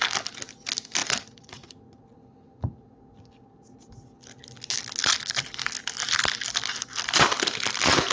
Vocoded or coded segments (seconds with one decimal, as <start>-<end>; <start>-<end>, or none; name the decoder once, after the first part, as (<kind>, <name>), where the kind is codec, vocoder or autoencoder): none